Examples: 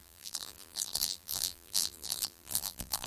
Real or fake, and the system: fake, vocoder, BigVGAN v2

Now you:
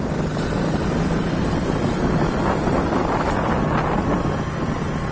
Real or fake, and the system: real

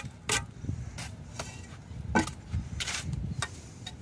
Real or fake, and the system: real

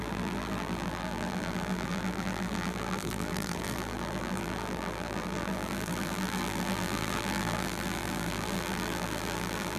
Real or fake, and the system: fake, vocoder, BigVGAN v2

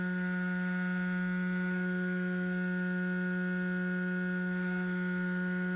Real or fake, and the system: real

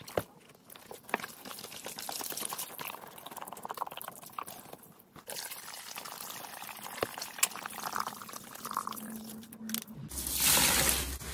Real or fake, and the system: real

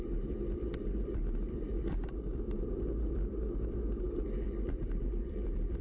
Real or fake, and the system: fake, vocoder, BigVGAN v2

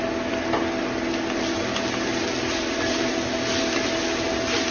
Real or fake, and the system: real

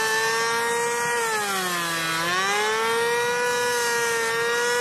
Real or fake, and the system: real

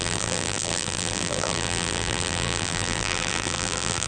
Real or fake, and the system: fake, vocoder, BigVGAN v2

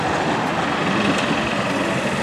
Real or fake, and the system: real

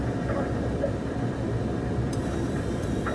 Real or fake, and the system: fake, vocoder, BigVGAN v2